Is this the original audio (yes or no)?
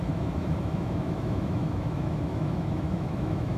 no